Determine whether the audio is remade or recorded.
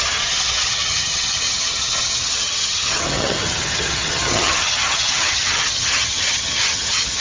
remade